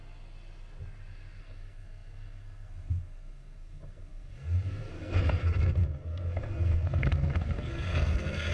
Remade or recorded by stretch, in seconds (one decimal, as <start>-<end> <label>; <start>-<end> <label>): 0.0-1.4 recorded; 1.4-8.5 remade